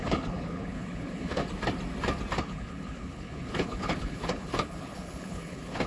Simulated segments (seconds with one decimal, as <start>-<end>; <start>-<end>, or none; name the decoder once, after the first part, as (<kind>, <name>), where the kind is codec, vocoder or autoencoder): 0.0-1.4 (codec, HILCodec); 2.4-5.9